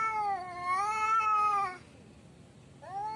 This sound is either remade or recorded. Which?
recorded